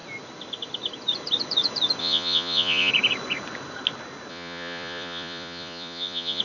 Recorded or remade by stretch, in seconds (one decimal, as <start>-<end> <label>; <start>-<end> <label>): 0.0-2.0 recorded; 2.0-2.9 remade; 2.9-4.3 recorded; 4.3-6.4 remade